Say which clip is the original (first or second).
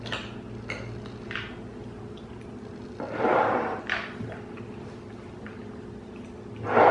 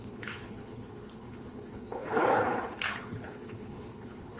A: first